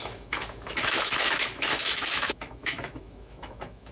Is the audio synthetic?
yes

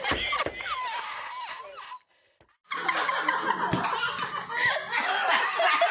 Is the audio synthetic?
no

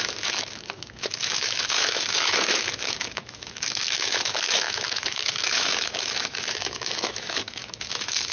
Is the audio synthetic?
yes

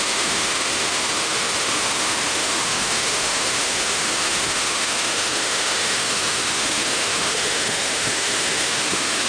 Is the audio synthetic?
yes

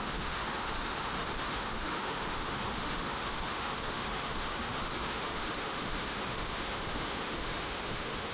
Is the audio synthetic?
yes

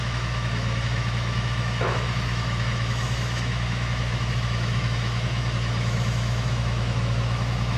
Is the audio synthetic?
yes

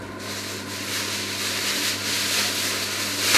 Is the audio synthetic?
no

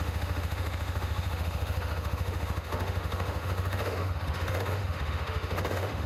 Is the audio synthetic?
yes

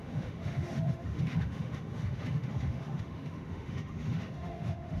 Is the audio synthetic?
yes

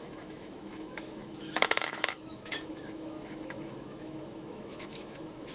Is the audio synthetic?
yes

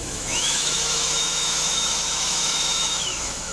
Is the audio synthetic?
yes